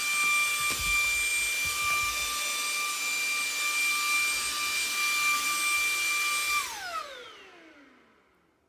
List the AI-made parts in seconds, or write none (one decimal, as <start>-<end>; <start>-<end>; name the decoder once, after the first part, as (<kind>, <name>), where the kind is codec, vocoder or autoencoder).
6.9-7.8 (vocoder, BigVGAN v2)